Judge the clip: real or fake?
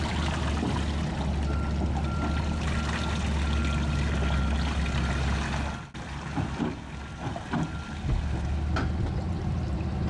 real